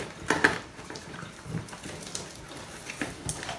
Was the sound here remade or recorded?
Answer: remade